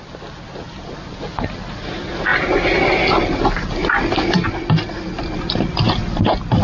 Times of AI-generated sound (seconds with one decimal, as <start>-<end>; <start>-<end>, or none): none